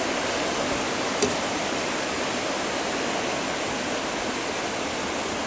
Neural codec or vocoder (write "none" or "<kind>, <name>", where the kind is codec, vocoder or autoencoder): none